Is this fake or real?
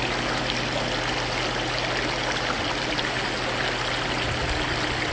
real